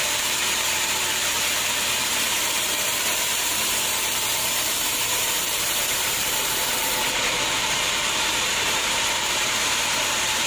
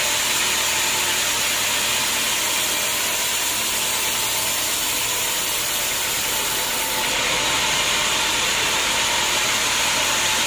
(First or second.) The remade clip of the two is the first